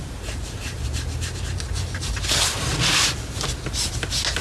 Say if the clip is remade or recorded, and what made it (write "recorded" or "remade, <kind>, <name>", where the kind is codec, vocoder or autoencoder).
recorded